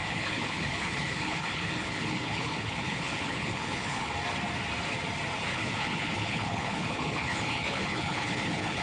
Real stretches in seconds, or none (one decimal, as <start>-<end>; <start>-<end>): 4.1-5.5